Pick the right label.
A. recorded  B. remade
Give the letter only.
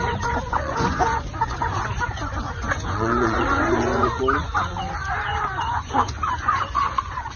B